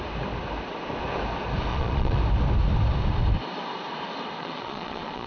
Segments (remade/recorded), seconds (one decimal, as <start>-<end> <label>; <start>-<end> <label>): 0.0-1.7 recorded; 1.7-2.2 remade; 2.2-4.4 recorded; 4.4-5.3 remade